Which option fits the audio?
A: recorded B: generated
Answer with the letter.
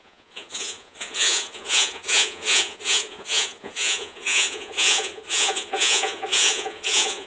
B